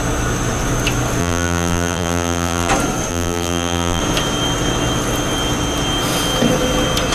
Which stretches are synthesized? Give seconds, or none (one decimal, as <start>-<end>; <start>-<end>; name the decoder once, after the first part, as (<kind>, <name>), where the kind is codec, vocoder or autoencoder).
1.2-2.7 (vocoder, BigVGAN v2); 3.1-4.0

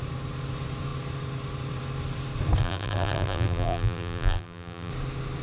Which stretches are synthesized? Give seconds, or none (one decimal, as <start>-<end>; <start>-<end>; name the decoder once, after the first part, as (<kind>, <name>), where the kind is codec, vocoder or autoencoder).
2.6-4.9 (vocoder, BigVGAN v2)

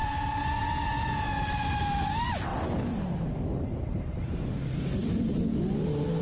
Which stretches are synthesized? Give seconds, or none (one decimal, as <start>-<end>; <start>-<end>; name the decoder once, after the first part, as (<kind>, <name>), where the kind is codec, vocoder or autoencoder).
2.5-5.3 (vocoder, BigVGAN v2)

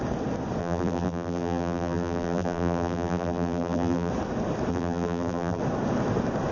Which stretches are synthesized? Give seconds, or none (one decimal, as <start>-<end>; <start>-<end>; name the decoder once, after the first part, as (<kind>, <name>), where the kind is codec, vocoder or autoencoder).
0.6-4.1 (vocoder, BigVGAN v2); 4.7-5.6

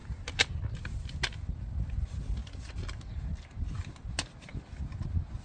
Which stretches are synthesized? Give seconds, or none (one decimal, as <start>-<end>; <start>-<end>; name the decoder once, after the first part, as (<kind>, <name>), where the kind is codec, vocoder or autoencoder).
none

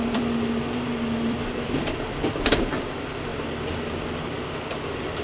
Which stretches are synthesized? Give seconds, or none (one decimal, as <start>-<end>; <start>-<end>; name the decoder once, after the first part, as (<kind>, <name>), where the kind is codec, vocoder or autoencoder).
0.0-2.8 (vocoder, BigVGAN v2); 3.3-5.2

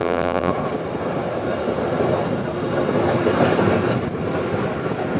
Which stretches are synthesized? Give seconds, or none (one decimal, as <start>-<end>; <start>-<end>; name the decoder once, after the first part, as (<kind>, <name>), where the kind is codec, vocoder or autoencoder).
0.0-0.5 (vocoder, BigVGAN v2)

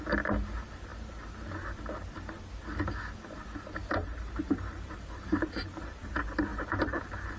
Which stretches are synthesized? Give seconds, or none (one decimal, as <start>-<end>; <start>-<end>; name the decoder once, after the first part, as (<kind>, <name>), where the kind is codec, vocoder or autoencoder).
3.8-6.1 (vocoder, BigVGAN v2); 6.5-7.4